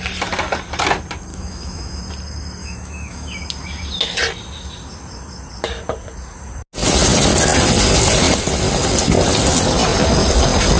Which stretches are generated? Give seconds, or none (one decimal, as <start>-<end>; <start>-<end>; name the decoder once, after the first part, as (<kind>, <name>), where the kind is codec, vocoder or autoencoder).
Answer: 1.3-2.0 (autoencoder, DAC-VAE); 2.6-3.4